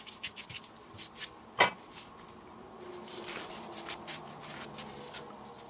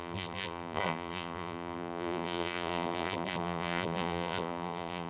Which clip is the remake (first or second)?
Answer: second